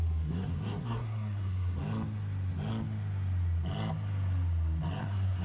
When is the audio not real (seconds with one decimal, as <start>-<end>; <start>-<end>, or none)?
0.0-1.8; 5.0-5.4